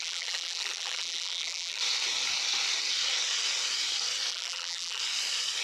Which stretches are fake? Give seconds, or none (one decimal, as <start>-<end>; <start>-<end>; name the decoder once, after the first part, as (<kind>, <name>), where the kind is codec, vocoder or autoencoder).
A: 0.0-1.8 (vocoder, BigVGAN v2); 4.3-5.0